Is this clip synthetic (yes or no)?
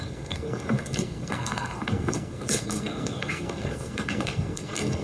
yes